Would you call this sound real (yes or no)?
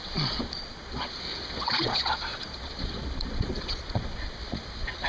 no